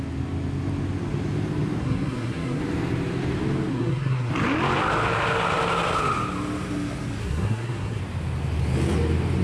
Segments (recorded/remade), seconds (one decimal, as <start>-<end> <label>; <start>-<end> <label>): 0.0-1.8 recorded; 1.8-2.6 remade; 2.6-3.7 recorded; 3.7-4.3 remade; 4.3-7.2 recorded; 7.2-8.0 remade; 8.0-9.4 recorded

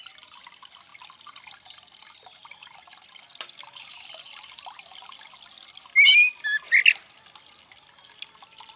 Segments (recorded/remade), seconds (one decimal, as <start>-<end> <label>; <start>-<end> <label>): 0.0-8.8 recorded

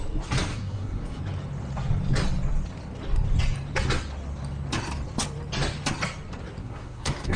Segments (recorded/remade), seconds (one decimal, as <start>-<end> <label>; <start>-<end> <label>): 0.0-0.5 recorded; 0.5-1.2 remade; 1.2-6.6 recorded; 6.6-7.4 remade

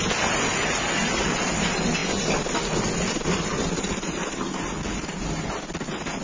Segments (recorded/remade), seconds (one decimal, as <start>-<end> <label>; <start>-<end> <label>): 0.0-6.2 recorded

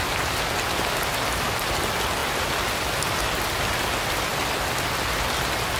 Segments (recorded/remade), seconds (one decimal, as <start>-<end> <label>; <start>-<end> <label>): 0.0-5.8 recorded

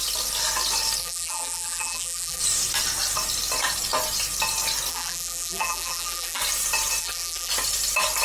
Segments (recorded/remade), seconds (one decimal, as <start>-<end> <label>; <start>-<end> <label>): 0.0-1.0 recorded; 1.0-2.4 remade; 2.4-4.9 recorded; 4.9-6.4 remade; 6.4-7.0 recorded; 7.0-7.5 remade; 7.5-8.2 recorded

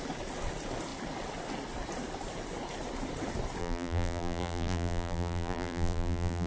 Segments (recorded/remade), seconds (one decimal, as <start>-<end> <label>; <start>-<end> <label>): 0.0-3.6 recorded; 3.6-6.5 remade